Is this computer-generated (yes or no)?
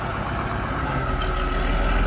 no